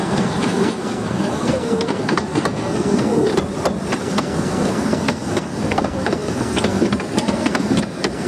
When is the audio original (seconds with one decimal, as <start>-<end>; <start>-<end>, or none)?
3.3-4.0

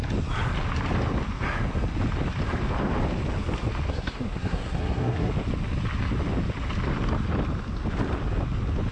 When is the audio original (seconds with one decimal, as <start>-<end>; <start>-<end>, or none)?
0.0-3.9; 5.3-8.9

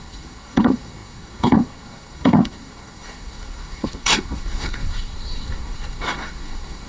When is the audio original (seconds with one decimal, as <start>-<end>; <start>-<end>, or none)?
none

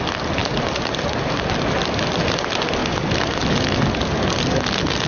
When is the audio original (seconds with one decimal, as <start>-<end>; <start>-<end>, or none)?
0.0-5.1

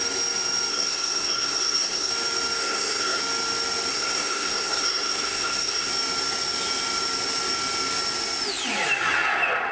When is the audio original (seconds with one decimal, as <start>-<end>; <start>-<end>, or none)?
0.0-0.7; 2.1-2.6; 3.2-3.9; 5.9-9.7

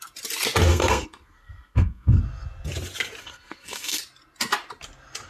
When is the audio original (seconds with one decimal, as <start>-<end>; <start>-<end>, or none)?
0.0-0.7; 2.2-3.2; 4.0-5.3

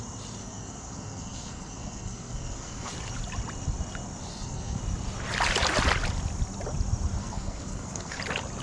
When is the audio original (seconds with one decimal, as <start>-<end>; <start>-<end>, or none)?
0.0-0.4; 2.9-4.3; 4.8-7.2; 8.2-8.6